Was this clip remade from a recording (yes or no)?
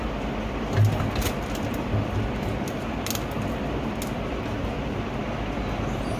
no